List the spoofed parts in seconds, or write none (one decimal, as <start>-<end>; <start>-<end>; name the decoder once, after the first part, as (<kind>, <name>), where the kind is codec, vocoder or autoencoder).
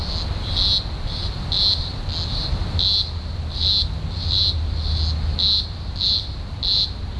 none